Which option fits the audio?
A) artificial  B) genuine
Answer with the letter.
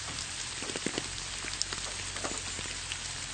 B